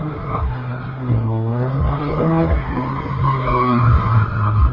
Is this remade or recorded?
remade